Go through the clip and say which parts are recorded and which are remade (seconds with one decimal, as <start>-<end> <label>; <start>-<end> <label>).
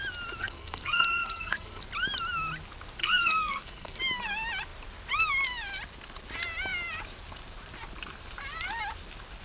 0.0-0.4 recorded; 0.4-1.8 remade; 1.8-3.0 recorded; 3.0-4.0 remade; 4.0-9.4 recorded